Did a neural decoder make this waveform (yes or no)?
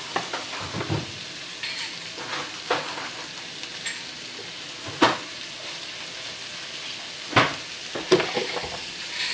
no